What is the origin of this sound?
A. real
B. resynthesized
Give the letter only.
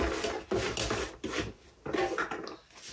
A